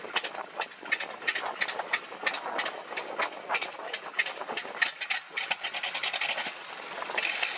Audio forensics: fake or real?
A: real